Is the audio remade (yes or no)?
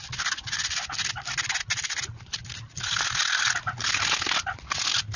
no